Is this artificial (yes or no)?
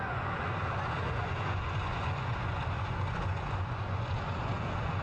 yes